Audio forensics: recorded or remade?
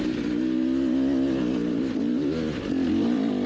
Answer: recorded